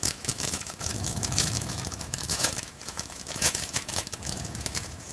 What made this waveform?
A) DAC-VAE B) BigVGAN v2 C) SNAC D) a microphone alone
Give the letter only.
A